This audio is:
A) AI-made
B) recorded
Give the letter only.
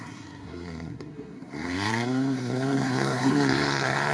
A